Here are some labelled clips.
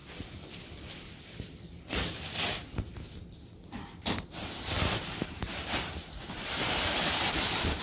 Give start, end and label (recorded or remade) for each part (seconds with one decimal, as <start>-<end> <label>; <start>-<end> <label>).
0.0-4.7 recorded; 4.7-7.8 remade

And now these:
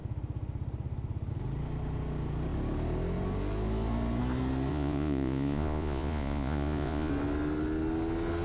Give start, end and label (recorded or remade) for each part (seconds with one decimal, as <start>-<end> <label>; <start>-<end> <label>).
0.0-4.7 recorded; 4.7-7.1 remade; 7.1-8.4 recorded

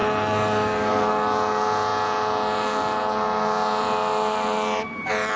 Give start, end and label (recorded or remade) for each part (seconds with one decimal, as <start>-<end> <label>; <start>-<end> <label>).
0.0-5.4 recorded

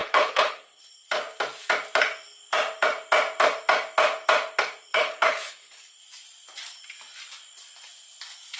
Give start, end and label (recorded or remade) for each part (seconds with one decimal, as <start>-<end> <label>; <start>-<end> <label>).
0.0-0.8 remade; 0.8-4.9 recorded; 4.9-5.8 remade; 5.8-8.6 recorded